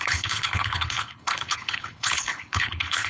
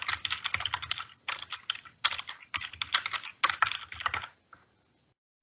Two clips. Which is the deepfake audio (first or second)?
first